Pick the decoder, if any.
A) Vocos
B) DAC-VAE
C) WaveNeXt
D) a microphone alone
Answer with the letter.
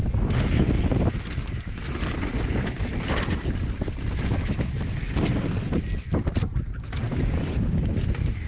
D